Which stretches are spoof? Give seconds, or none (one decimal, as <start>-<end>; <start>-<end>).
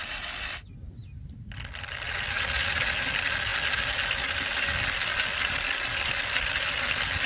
none